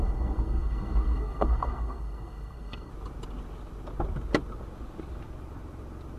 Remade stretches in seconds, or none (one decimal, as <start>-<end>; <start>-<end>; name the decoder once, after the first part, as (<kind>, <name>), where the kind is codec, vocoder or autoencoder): 0.0-2.9 (codec, SNAC)